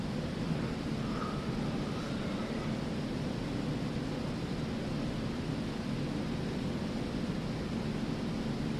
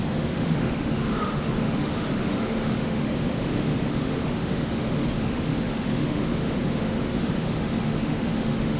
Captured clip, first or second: first